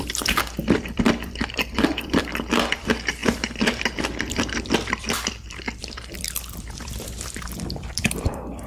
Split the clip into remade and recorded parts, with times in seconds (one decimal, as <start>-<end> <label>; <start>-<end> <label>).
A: 0.0-8.7 remade